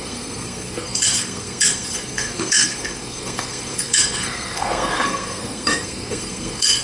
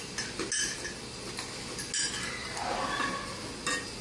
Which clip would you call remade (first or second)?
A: first